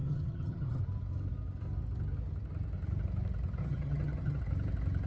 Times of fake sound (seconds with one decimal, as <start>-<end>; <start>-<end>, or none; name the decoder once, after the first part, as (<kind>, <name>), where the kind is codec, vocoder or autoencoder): 0.0-0.8 (vocoder, HiFi-GAN); 3.6-4.4